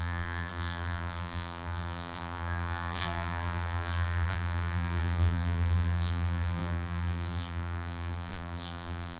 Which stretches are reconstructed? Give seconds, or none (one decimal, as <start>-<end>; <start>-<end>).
0.0-9.2

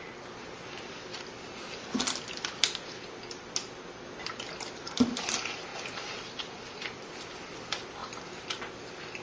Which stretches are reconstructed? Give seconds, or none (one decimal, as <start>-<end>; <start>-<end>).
5.7-6.5

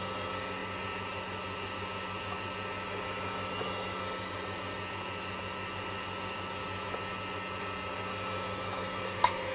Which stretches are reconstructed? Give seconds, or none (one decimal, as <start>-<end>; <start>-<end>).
none

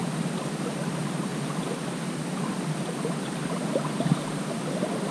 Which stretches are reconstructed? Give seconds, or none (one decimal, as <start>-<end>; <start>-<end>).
0.0-1.3; 4.4-5.1

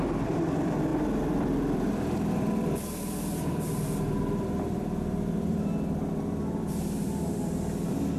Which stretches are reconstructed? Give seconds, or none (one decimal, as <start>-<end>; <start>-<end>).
0.0-8.2

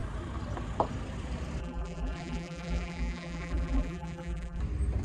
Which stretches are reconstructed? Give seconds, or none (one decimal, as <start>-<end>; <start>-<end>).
1.6-4.6